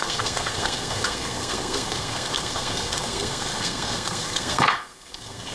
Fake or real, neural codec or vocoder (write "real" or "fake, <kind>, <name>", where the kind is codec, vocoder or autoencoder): fake, codec, SNAC